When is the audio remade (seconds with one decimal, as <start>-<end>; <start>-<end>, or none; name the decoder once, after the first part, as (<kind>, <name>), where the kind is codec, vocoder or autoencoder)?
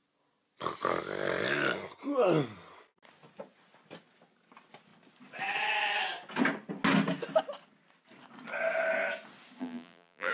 9.6-10.3 (vocoder, BigVGAN v2)